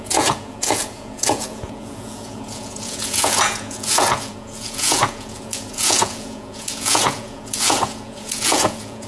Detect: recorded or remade remade